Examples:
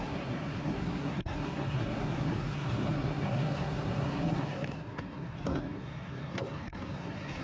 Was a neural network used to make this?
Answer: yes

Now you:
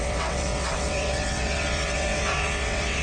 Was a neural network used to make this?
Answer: yes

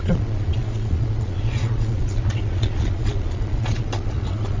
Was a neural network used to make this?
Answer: yes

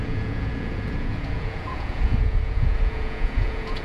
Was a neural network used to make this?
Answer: yes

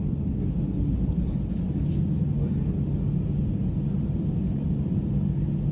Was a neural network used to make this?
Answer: no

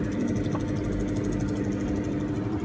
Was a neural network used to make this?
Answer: no